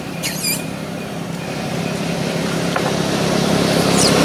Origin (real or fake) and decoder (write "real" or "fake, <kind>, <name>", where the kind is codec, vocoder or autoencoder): fake, vocoder, BigVGAN v2